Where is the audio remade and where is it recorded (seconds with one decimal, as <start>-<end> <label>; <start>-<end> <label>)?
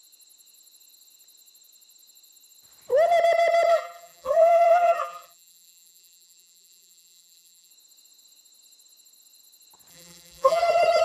0.0-3.7 recorded; 3.7-7.7 remade; 7.7-9.9 recorded; 9.9-10.6 remade; 10.6-11.0 recorded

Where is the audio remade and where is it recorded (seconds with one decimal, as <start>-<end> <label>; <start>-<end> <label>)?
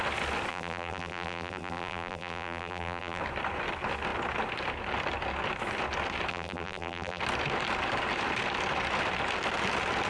0.0-0.5 recorded; 0.5-3.2 remade; 3.2-6.3 recorded; 6.3-7.2 remade; 7.2-10.1 recorded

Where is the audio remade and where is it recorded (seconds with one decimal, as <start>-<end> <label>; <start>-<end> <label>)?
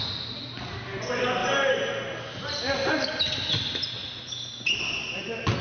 0.0-1.4 recorded; 1.4-1.9 remade; 1.9-4.0 recorded; 4.0-4.8 remade; 4.8-5.6 recorded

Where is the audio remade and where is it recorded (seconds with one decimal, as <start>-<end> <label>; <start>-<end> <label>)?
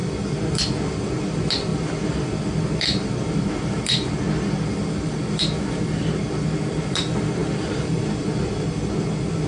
0.0-9.5 recorded